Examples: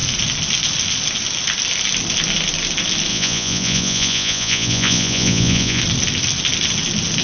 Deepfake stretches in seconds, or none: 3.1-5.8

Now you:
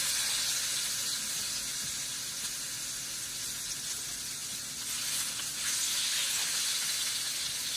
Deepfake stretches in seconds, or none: none

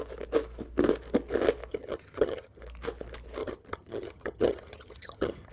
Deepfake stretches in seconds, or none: 1.7-2.6; 3.4-5.5

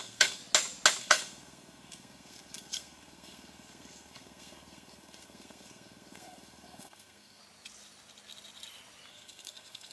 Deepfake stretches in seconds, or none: 0.0-0.4; 1.0-7.4; 9.1-9.9